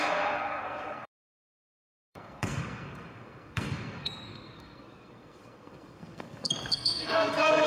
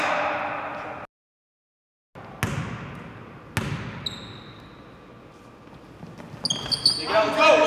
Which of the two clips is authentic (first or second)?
second